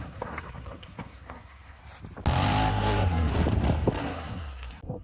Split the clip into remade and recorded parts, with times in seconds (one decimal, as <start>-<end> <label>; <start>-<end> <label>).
0.0-1.8 remade; 1.8-2.7 recorded; 2.7-3.3 remade; 3.3-4.0 recorded; 4.0-5.0 remade